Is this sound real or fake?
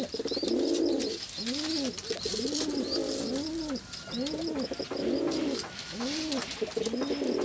real